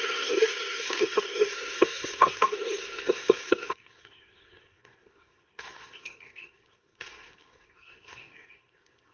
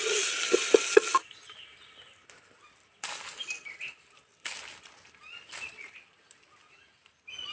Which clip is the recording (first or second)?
second